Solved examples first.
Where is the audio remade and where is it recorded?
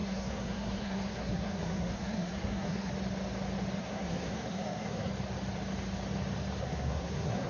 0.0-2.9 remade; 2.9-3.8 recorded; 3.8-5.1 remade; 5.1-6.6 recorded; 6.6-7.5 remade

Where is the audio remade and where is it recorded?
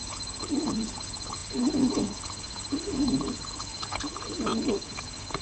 0.0-5.4 remade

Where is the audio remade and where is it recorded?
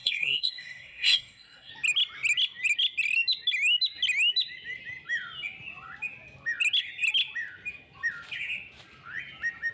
0.0-1.7 remade; 1.7-9.7 recorded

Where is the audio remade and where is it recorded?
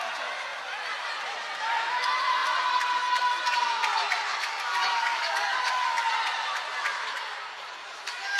0.0-4.3 recorded; 4.3-6.1 remade; 6.1-8.4 recorded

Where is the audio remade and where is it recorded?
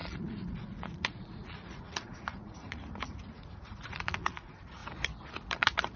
0.0-4.8 remade; 4.8-5.5 recorded; 5.5-6.0 remade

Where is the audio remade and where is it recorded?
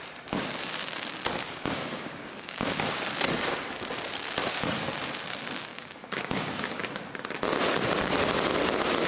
0.0-1.4 recorded; 1.4-3.1 remade; 3.1-5.7 recorded; 5.7-6.9 remade; 6.9-9.1 recorded